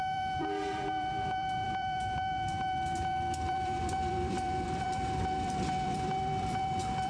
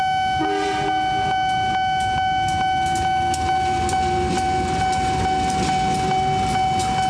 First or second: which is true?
second